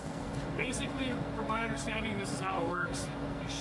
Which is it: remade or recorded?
remade